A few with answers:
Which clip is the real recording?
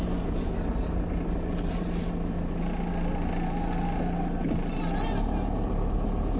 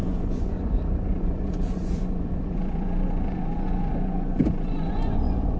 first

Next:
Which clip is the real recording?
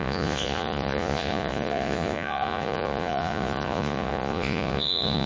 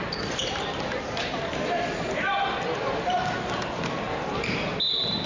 second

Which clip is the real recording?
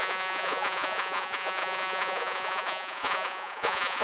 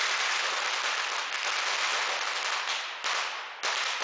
second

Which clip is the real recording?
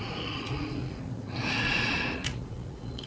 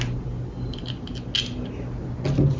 second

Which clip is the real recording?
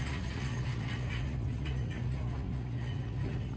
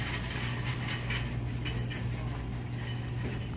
second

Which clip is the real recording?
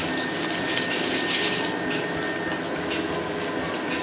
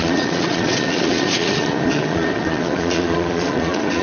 first